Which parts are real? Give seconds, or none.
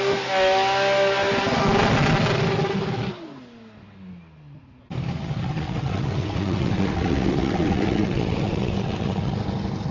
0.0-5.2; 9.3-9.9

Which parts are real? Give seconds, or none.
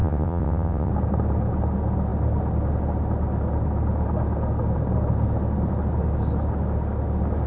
0.9-7.5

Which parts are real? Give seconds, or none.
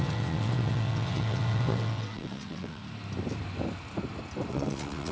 2.8-4.5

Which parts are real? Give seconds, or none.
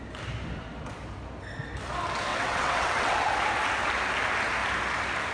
0.0-2.3; 3.3-5.3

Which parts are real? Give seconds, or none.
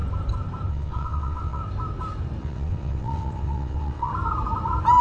0.0-0.7; 1.6-2.4; 4.1-5.0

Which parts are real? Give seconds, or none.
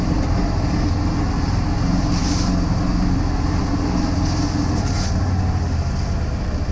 0.0-6.7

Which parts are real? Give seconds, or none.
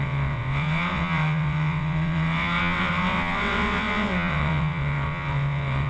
none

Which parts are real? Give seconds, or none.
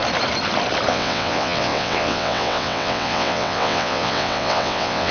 0.0-0.9